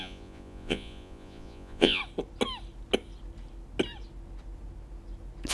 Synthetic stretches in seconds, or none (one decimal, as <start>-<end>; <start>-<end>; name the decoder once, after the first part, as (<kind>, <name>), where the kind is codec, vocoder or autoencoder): 0.0-2.0 (vocoder, Vocos)